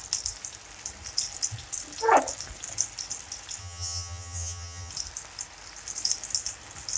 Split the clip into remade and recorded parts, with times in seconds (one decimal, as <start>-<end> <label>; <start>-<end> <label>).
0.0-3.6 recorded; 3.6-4.9 remade; 4.9-7.0 recorded